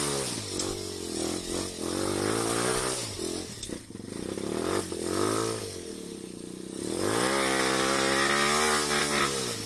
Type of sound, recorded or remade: recorded